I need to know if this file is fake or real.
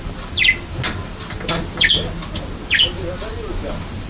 real